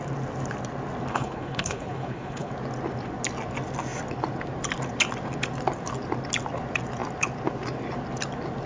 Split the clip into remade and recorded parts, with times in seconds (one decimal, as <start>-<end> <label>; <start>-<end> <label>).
0.0-1.1 recorded; 1.1-2.5 remade; 2.5-8.7 recorded